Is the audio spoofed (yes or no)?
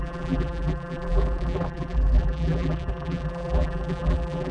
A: yes